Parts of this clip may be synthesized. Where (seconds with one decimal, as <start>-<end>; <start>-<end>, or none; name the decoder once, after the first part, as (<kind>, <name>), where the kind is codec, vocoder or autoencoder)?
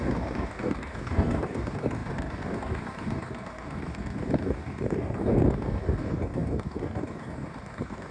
0.0-8.1 (codec, DAC)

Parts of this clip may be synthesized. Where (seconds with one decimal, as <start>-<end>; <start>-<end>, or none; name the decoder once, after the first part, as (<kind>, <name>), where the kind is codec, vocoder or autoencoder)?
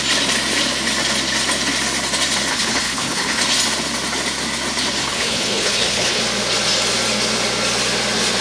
2.5-3.4 (codec, HILCodec); 5.0-6.2